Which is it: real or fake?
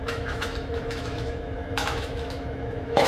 fake